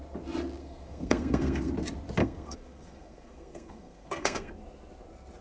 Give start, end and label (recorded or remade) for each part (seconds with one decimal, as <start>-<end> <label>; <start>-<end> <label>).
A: 0.0-0.6 recorded; 0.6-1.7 remade; 1.7-2.2 recorded; 2.2-4.5 remade; 4.5-5.4 recorded